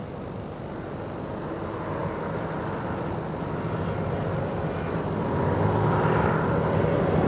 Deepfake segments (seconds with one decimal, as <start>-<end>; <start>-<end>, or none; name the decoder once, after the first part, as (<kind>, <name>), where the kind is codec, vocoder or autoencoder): none